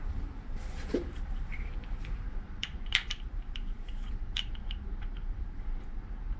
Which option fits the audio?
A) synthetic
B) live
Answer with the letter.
A